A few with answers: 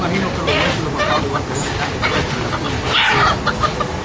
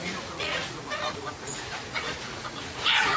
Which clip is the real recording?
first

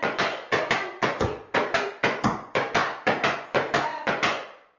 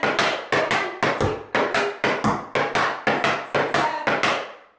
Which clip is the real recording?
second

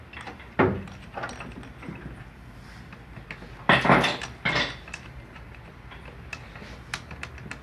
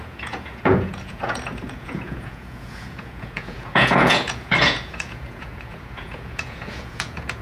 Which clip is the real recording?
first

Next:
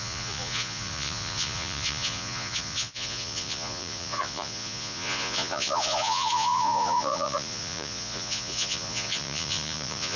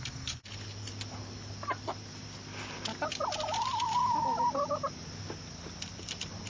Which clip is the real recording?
second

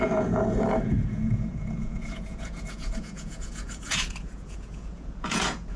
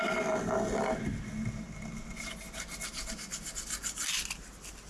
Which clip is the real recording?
second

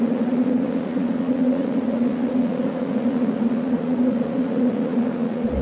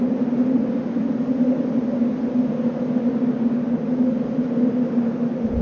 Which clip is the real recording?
second